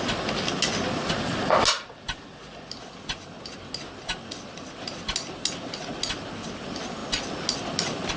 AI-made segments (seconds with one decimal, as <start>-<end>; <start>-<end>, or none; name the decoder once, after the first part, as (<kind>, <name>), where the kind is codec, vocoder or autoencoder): none